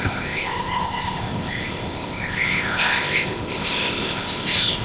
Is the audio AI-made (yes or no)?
yes